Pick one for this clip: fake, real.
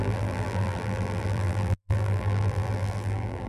fake